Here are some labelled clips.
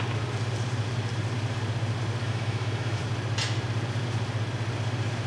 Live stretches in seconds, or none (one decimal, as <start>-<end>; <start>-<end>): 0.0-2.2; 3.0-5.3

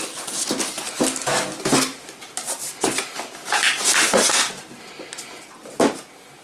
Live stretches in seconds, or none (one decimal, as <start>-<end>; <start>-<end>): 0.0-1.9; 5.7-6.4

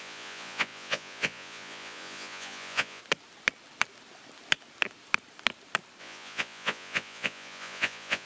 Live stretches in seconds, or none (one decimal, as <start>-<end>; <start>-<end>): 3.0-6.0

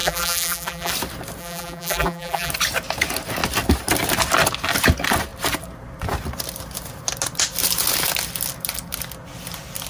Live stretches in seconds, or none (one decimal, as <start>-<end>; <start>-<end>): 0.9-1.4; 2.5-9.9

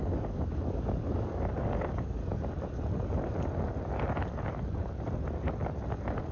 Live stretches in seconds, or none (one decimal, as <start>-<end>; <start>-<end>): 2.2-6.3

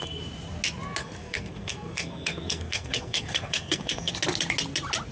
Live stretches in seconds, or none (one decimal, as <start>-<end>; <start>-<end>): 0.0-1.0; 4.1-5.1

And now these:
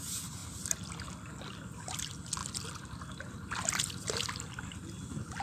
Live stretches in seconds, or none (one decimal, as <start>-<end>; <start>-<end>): 0.0-5.4